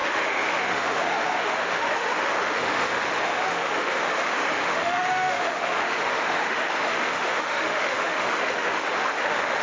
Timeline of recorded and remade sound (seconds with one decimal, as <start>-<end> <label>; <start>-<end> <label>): 0.0-9.6 remade